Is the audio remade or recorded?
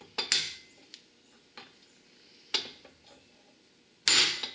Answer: recorded